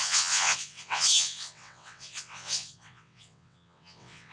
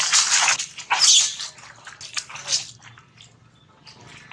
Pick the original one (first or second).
second